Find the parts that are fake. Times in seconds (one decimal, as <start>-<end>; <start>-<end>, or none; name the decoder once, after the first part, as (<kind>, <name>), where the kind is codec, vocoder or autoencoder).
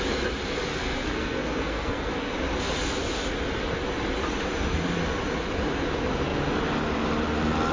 0.7-2.3 (codec, SNAC)